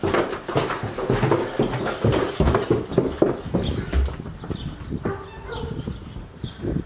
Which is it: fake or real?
real